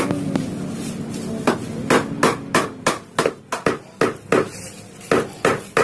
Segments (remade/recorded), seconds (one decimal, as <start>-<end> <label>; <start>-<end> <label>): 0.0-5.8 recorded